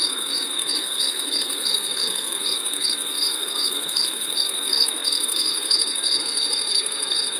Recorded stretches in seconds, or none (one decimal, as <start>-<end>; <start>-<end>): none